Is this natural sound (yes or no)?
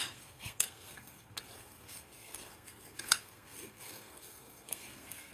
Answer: no